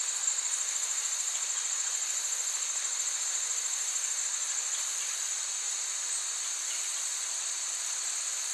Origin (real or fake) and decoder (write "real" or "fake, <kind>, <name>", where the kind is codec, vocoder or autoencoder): real